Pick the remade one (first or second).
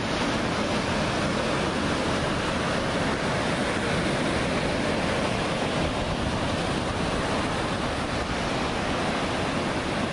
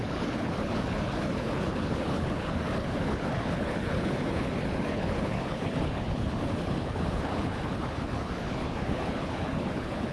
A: second